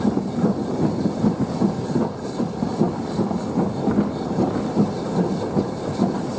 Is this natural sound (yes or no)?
yes